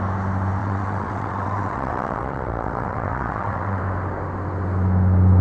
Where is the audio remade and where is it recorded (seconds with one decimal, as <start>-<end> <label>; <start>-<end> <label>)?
0.0-0.6 recorded; 0.6-3.8 remade; 3.8-5.4 recorded